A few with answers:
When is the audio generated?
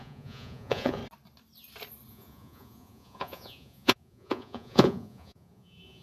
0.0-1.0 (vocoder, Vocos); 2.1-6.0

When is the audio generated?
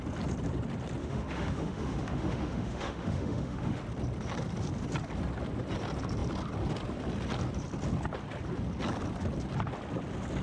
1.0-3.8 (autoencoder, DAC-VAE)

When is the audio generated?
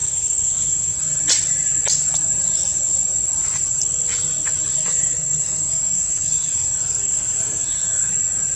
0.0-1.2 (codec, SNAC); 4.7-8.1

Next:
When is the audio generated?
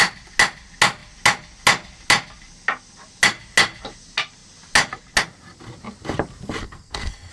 6.6-7.3 (codec, SNAC)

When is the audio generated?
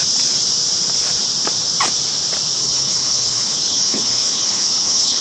2.6-5.2 (codec, HILCodec)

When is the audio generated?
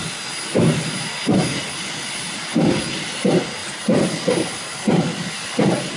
none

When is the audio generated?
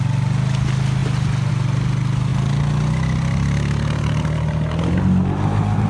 none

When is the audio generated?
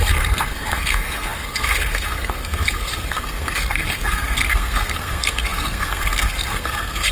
0.0-7.1 (codec, SNAC)